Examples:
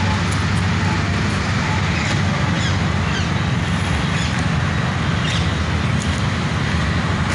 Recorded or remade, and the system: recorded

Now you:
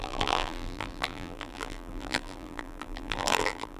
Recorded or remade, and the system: remade, vocoder, BigVGAN v2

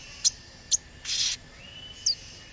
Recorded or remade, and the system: recorded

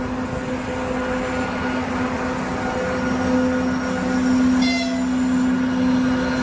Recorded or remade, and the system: recorded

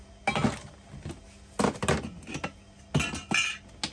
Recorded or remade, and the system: recorded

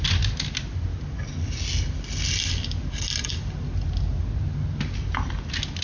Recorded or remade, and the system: recorded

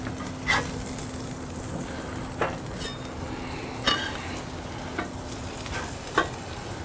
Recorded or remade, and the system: recorded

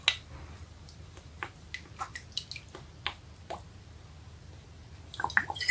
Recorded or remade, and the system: recorded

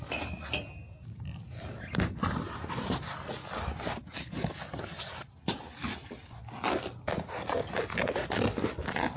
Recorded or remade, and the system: recorded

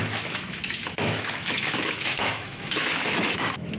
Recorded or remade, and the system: remade, autoencoder, DAC-VAE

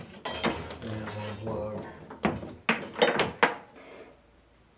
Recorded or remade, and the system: recorded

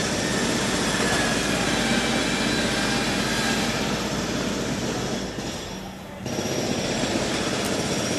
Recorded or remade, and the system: recorded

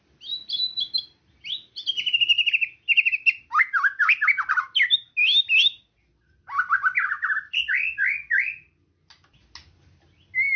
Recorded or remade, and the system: recorded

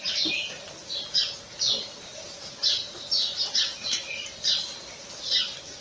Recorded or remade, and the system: recorded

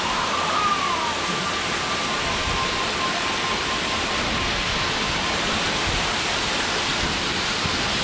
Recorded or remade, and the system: recorded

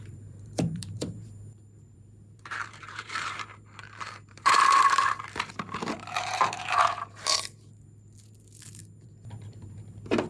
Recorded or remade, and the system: remade, vocoder, BigVGAN v2